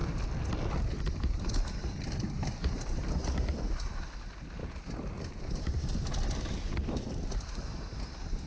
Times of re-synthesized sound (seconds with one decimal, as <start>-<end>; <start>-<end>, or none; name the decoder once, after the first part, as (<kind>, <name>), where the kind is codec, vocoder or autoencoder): 4.6-5.8 (vocoder, BigVGAN v2)